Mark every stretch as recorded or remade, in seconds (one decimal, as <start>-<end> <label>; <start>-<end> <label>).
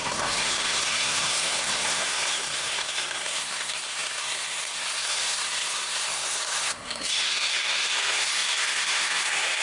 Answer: 0.0-9.6 remade